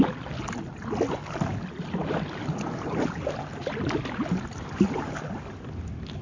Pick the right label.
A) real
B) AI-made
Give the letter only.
A